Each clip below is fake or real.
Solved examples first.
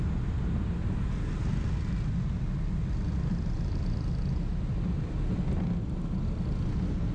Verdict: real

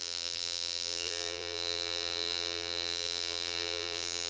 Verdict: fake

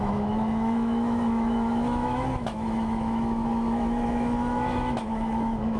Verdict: fake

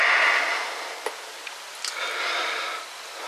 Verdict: real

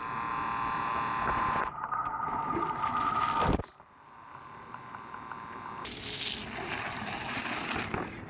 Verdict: real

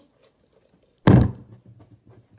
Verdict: real